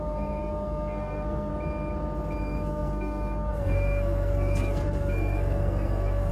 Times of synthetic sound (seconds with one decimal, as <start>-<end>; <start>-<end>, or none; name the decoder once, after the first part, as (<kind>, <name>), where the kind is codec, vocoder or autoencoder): 0.0-1.5 (codec, SNAC); 2.4-6.3